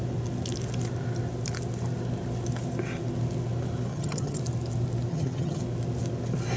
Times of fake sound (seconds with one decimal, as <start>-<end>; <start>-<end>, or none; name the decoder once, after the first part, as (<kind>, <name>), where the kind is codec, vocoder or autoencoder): 3.9-4.4 (vocoder, HiFi-GAN); 5.1-5.6